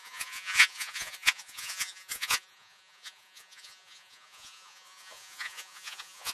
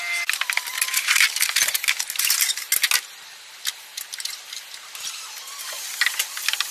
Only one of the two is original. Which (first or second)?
second